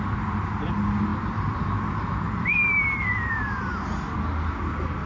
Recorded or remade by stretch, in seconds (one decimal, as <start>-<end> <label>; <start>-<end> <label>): 0.0-1.1 recorded; 1.1-3.3 remade; 3.3-5.1 recorded